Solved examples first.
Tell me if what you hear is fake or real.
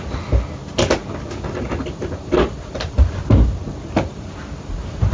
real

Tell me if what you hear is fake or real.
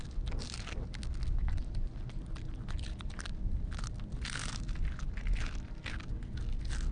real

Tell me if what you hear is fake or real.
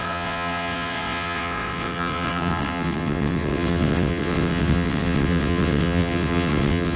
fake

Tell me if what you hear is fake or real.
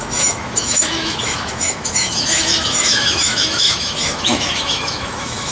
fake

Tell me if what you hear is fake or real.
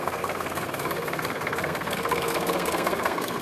fake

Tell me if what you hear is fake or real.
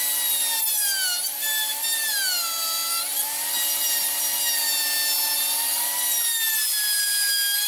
real